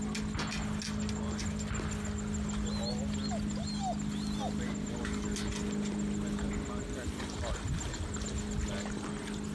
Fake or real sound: real